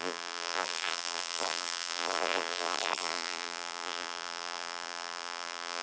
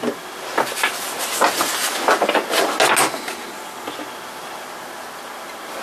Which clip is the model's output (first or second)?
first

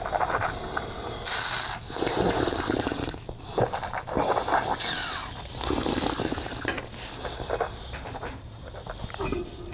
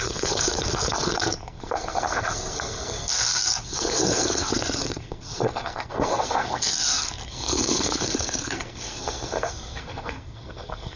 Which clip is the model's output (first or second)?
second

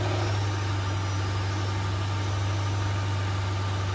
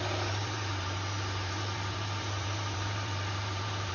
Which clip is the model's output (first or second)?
second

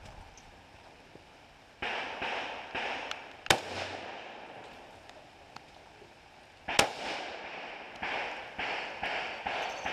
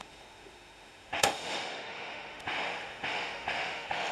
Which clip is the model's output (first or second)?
second